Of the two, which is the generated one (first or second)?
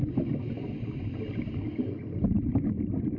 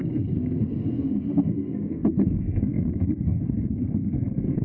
second